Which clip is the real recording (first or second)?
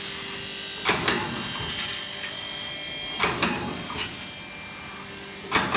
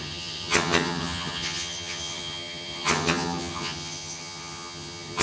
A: first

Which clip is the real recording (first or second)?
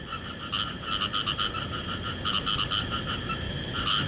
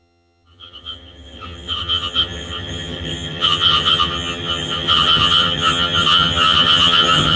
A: first